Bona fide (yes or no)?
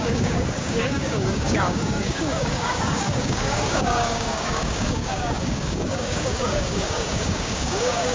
no